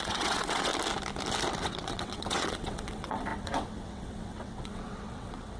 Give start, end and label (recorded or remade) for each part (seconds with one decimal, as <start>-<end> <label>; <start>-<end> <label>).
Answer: 0.0-0.7 remade; 0.7-1.6 recorded; 1.6-5.6 remade